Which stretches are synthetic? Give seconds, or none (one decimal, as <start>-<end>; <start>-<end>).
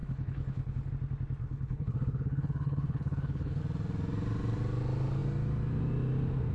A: 0.0-0.9; 1.4-3.6